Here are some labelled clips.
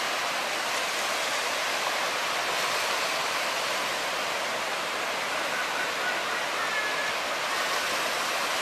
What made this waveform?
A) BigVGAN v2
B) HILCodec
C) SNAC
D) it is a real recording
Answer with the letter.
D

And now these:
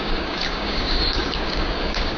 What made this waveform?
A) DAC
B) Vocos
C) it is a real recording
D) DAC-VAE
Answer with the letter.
A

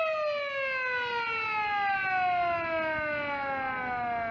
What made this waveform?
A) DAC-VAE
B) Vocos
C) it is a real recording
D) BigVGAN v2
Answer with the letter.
C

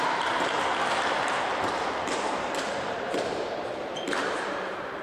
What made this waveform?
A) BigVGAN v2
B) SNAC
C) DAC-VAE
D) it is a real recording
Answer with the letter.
A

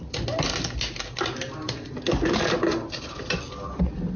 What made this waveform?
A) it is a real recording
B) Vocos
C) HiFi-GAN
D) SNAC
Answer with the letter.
A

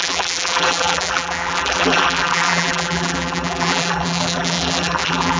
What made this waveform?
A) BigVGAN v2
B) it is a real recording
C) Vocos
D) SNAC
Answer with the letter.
A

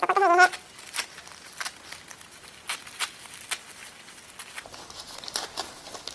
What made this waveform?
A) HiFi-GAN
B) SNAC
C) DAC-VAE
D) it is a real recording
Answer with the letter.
D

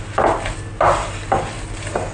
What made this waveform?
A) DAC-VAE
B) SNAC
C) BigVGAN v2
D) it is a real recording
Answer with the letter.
D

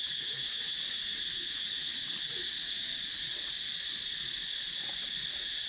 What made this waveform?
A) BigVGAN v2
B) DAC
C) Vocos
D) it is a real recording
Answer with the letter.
D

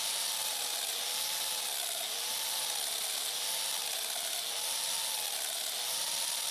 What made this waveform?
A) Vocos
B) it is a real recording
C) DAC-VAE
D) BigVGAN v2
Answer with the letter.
B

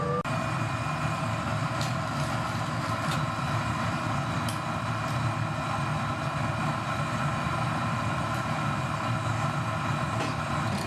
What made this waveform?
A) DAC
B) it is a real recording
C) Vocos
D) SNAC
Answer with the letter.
B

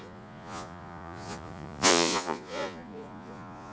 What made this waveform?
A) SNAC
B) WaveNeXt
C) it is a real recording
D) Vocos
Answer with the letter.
D